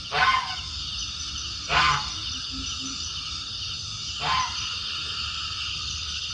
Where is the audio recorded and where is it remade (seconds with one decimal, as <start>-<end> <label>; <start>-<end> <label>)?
0.0-5.7 recorded; 5.7-6.3 remade